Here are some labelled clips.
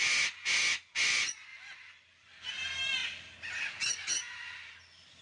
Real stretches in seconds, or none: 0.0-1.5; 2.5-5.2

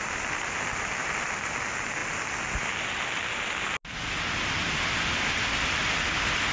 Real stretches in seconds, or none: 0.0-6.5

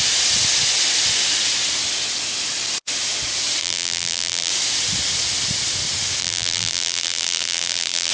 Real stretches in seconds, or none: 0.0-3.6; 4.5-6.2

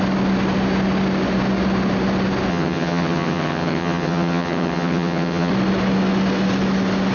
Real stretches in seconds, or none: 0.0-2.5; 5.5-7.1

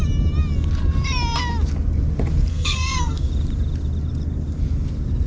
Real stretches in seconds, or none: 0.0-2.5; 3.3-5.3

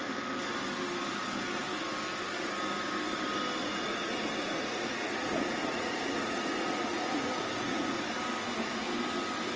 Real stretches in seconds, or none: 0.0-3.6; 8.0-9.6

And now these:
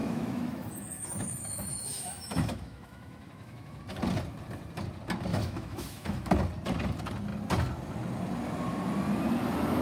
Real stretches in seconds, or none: 3.8-5.3; 6.3-9.8